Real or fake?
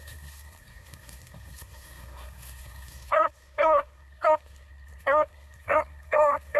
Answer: fake